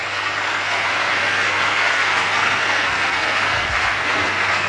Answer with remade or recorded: remade